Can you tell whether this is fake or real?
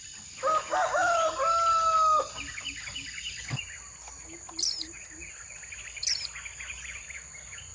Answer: real